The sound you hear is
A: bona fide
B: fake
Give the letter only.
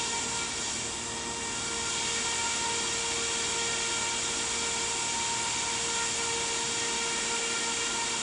A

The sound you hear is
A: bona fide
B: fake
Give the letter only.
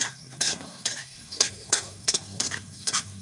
B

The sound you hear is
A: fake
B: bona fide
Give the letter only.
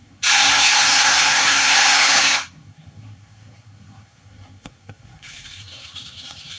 A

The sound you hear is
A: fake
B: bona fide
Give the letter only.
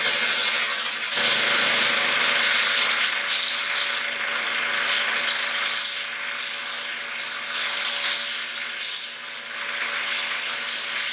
B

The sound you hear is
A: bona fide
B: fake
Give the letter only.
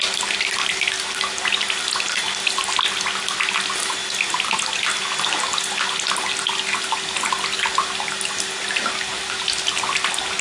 A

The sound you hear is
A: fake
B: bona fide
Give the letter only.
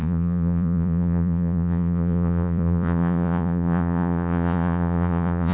A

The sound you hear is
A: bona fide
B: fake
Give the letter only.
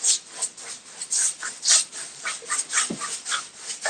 A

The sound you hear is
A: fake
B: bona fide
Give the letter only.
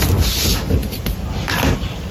B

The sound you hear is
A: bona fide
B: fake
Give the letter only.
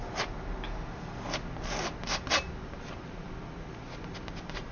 A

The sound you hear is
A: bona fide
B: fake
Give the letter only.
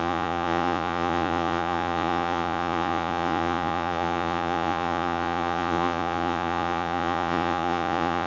B